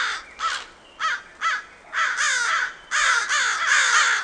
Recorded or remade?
recorded